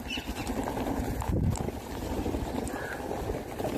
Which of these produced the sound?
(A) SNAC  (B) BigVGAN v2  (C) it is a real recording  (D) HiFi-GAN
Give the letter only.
C